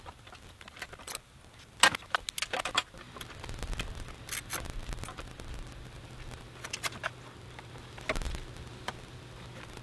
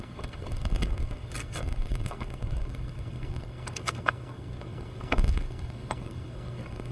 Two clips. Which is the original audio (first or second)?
first